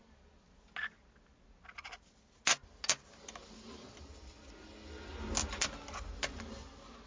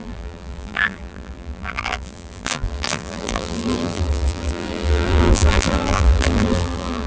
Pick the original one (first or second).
first